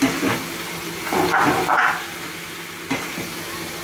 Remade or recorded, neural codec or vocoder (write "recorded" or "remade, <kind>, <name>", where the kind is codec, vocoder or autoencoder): recorded